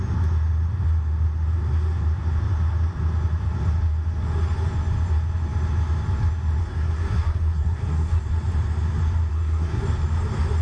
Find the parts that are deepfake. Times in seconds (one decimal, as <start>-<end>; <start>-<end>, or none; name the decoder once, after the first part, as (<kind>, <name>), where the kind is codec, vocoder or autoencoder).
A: 6.6-8.2 (codec, SNAC); 9.3-9.8